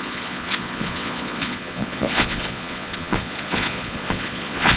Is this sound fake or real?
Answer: fake